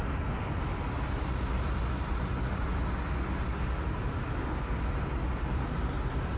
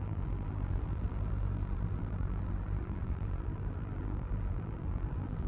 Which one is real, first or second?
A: first